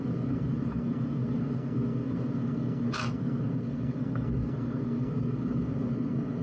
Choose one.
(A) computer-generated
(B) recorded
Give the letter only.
A